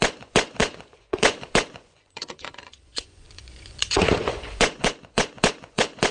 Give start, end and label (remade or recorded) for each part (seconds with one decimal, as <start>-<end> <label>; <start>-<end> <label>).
0.0-6.1 remade